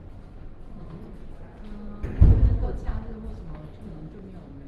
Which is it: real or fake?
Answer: real